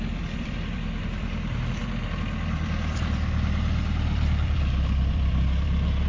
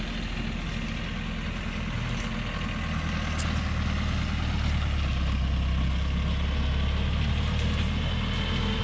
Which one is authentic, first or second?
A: second